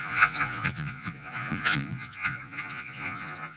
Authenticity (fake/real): fake